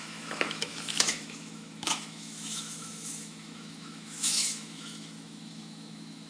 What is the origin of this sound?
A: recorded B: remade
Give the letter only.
B